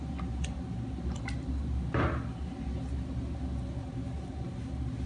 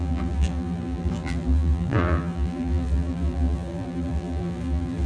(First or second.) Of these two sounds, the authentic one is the first